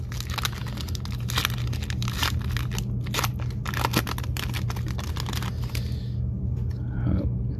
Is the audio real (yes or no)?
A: yes